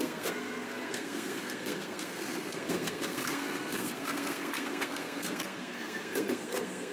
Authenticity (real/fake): fake